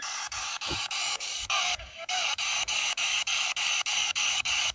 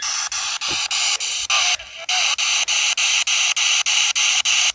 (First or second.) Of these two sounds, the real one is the second